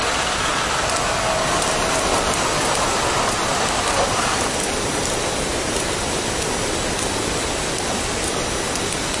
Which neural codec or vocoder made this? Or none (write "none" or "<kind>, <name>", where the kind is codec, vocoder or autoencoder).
none